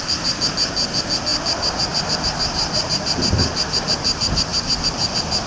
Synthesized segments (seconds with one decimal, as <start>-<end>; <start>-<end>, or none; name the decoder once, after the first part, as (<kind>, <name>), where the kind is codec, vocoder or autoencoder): none